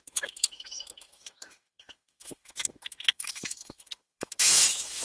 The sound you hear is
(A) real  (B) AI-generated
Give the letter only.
B